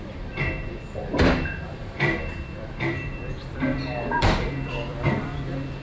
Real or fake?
fake